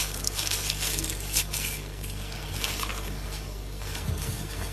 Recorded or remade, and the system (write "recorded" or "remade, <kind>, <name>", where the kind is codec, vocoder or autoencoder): remade, codec, SNAC